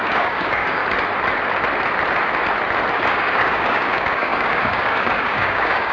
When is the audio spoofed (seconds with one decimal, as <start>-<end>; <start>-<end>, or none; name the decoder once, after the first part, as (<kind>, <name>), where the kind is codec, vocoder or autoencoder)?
0.0-0.8 (codec, DAC); 2.9-5.9